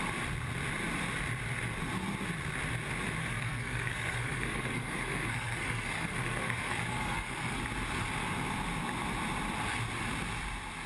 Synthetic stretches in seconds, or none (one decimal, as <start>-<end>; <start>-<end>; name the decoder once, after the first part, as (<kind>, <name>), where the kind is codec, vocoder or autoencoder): 3.2-7.6 (codec, SNAC)